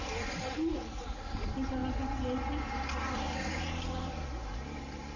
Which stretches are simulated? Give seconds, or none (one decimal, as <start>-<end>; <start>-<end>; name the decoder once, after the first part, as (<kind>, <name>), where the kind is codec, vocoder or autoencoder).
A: 0.7-1.3 (vocoder, Vocos)